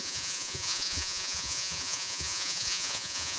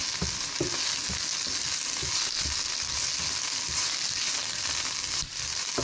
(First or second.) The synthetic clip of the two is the first